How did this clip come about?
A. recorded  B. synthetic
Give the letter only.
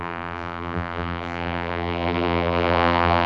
B